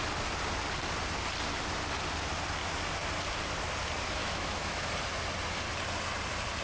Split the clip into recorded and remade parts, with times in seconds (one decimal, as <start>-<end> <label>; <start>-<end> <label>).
0.0-4.2 recorded; 4.2-4.9 remade; 4.9-6.6 recorded